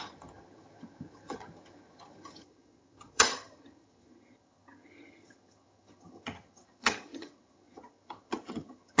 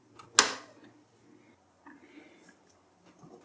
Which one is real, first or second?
second